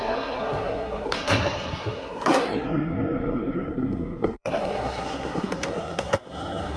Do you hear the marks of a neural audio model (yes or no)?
yes